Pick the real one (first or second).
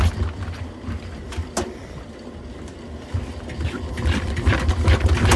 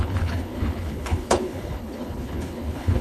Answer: first